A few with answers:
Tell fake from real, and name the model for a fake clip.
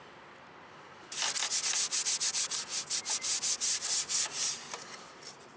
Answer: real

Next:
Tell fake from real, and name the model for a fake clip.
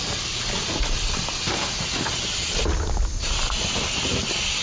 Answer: real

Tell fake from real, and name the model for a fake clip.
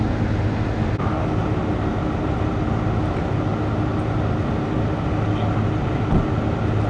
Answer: real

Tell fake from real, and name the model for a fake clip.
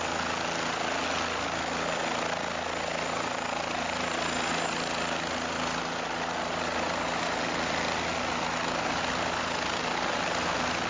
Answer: real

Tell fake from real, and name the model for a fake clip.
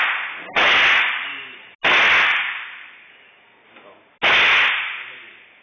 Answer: real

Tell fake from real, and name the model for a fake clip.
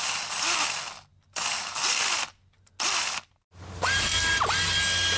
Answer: real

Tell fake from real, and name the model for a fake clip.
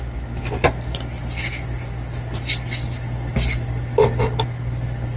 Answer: real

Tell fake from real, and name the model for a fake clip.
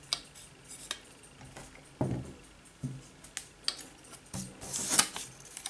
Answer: real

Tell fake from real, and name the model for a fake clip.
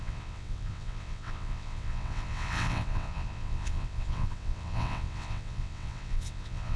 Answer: fake, vocoder, WaveNeXt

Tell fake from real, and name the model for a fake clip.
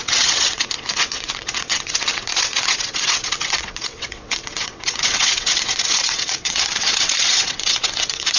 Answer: fake, vocoder, WaveNeXt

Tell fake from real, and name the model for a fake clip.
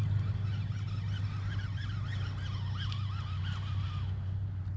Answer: real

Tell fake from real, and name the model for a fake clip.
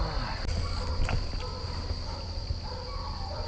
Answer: real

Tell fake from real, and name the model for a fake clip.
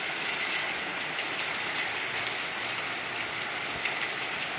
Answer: real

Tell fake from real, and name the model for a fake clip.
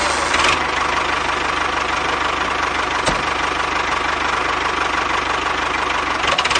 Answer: real